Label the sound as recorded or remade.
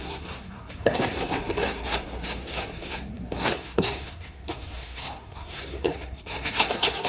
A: remade